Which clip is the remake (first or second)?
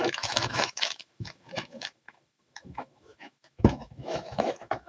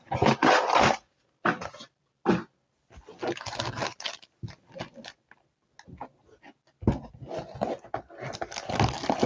first